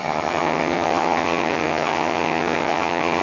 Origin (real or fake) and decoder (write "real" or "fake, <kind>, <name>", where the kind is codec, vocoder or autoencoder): fake, vocoder, HiFi-GAN